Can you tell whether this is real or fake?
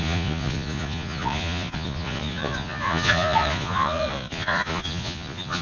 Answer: fake